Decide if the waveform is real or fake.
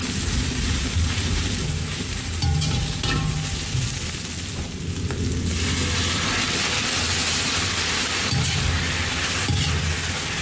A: real